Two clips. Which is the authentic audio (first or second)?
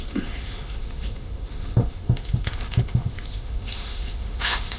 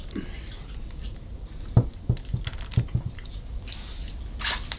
second